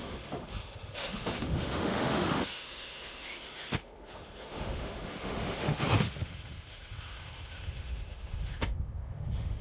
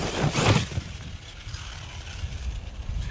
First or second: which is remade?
first